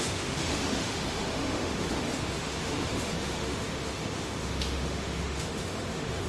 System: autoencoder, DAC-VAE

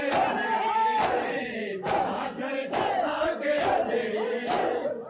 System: none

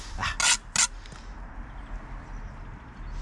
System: none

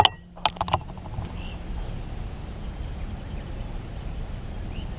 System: none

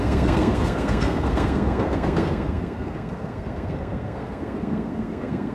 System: codec, SNAC